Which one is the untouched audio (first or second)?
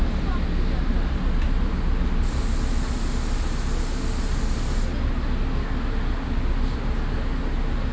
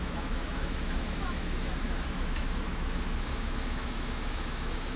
first